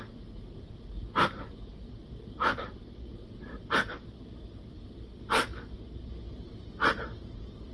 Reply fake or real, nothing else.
real